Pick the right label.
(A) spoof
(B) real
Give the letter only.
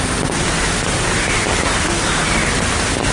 B